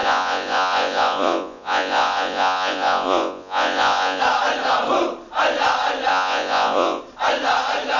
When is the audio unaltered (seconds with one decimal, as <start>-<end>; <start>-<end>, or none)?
4.2-6.1; 7.0-8.0